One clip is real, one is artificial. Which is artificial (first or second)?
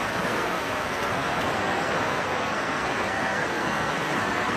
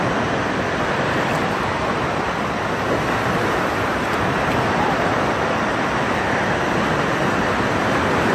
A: first